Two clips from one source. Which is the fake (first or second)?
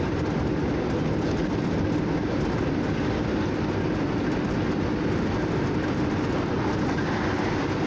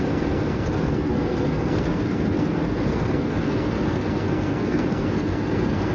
second